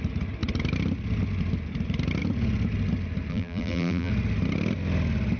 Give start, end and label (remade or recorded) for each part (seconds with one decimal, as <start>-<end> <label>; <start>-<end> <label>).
0.0-3.3 recorded; 3.3-4.1 remade; 4.1-5.4 recorded